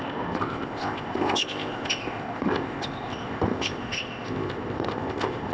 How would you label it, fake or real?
fake